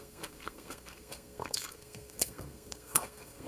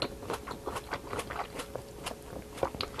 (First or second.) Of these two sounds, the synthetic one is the first